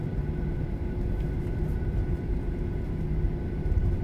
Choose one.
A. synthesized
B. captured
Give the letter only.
A